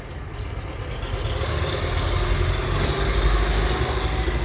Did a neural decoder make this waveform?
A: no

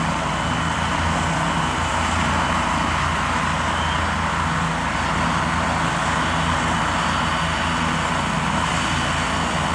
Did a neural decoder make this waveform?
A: no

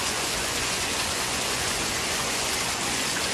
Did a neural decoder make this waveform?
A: yes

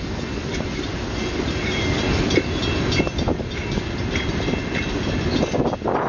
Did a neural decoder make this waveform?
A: no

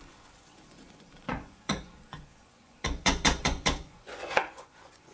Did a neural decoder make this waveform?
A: yes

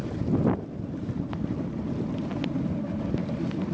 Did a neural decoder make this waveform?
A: no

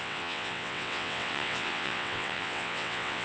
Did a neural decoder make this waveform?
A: yes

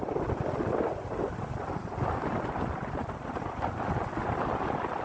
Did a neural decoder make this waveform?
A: no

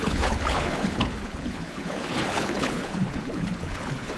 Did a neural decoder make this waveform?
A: yes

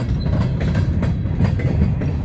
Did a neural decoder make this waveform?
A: no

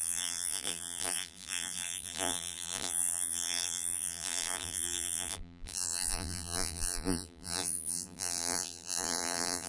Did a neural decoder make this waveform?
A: yes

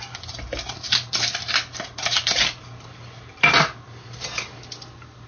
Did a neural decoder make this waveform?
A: no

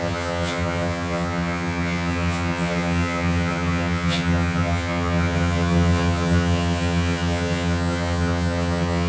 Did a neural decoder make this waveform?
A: yes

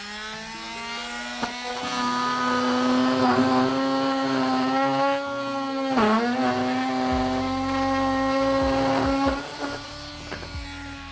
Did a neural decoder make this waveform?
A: no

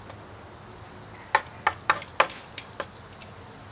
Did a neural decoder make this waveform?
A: no